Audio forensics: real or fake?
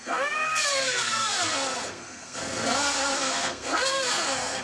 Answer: fake